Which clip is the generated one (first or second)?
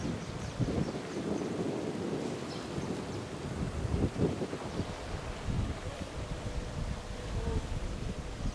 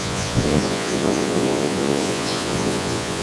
second